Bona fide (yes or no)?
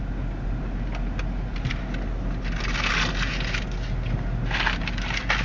yes